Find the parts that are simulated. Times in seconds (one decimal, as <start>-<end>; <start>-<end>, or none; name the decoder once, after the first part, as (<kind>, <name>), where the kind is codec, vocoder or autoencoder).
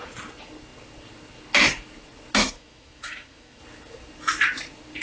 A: 2.4-3.6 (autoencoder, DAC-VAE)